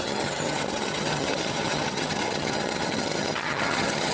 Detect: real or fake fake